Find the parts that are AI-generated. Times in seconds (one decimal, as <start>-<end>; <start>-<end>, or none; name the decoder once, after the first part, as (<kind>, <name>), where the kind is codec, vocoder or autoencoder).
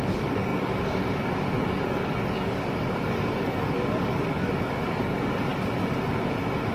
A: 0.0-5.5 (codec, DAC)